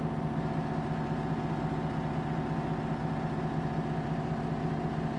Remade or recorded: recorded